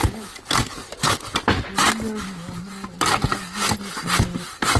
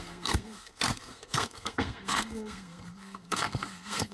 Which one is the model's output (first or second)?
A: second